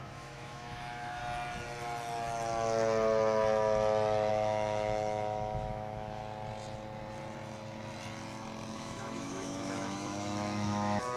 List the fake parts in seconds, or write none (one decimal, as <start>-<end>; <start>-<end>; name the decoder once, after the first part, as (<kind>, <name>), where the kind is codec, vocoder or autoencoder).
0.0-1.2 (autoencoder, DAC-VAE); 4.3-6.2; 8.7-11.2